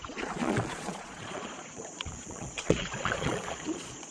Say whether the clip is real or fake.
fake